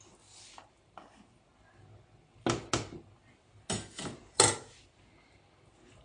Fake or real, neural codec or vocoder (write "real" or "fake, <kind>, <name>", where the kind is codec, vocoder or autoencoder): real